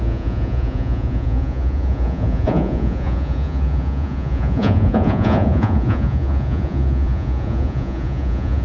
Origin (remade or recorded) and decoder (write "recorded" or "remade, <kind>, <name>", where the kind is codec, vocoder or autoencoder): remade, vocoder, Vocos